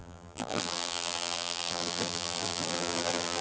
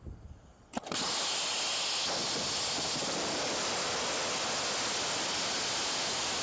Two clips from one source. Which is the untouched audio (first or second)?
second